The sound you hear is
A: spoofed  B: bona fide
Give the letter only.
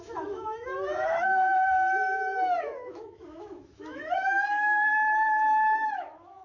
A